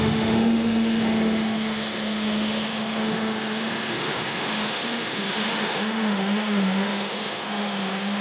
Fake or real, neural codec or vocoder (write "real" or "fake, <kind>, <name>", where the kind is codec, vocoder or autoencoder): fake, autoencoder, DAC-VAE